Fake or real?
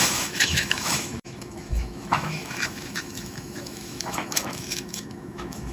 fake